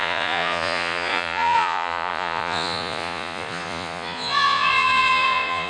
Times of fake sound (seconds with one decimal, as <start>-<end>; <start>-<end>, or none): 0.0-5.7